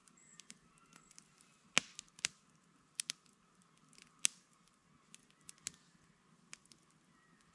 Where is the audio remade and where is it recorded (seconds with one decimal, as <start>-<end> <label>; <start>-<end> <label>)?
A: 0.0-0.7 remade; 0.7-7.5 recorded